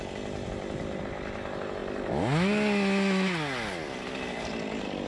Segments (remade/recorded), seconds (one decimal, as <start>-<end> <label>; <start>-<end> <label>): 0.0-5.1 recorded